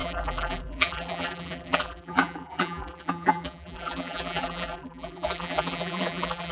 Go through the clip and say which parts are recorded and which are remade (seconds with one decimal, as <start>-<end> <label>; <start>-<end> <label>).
0.0-6.5 remade